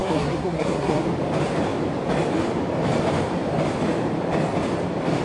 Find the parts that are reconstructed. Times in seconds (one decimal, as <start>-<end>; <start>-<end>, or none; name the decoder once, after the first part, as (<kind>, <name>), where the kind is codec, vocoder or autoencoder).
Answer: 0.0-1.0 (codec, SNAC)